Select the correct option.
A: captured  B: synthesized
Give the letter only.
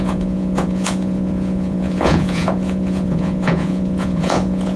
B